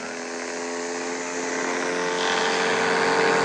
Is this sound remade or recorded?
recorded